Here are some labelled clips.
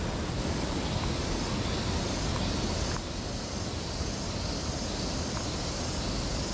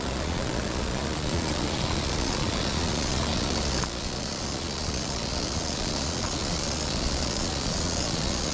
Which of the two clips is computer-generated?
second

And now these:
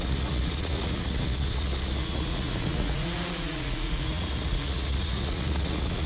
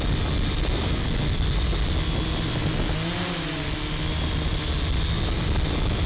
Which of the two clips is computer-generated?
first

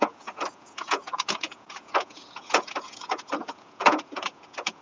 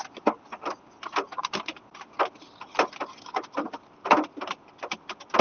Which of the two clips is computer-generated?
first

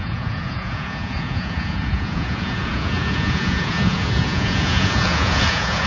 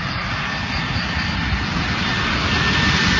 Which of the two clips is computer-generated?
first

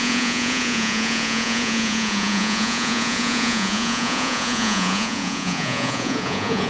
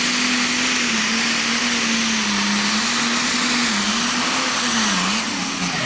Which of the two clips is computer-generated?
first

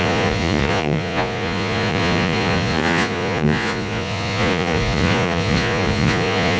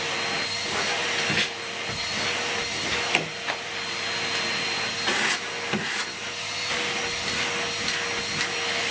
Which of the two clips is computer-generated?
first